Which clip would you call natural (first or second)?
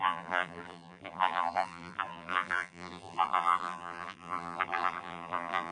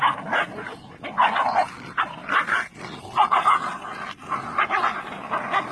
second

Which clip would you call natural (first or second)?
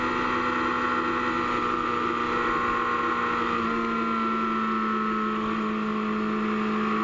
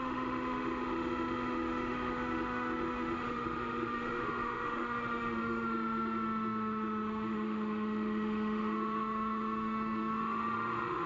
first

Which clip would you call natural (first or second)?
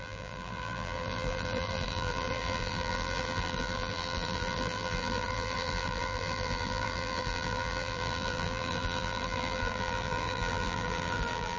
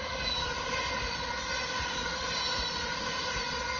second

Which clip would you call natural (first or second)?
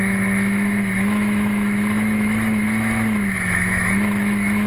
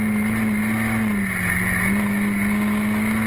second